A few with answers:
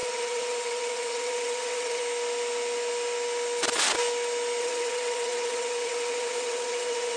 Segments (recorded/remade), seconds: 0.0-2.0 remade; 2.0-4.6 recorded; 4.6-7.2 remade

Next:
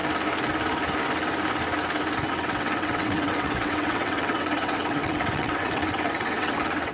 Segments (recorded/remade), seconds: 0.0-2.3 recorded; 2.3-6.9 remade

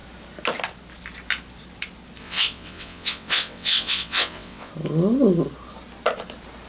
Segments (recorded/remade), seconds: 0.0-2.2 recorded; 2.2-4.7 remade; 4.7-6.7 recorded

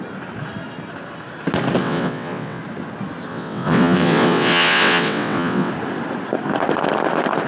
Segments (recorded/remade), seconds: 0.0-1.8 recorded; 1.8-2.6 remade; 2.6-3.3 recorded; 3.3-5.7 remade; 5.7-7.5 recorded

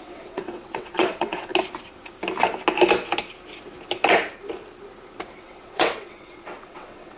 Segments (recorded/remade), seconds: 0.0-1.5 remade; 1.5-5.4 recorded; 5.4-7.2 remade